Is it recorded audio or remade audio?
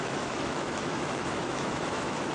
remade